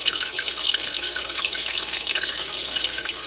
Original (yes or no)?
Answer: no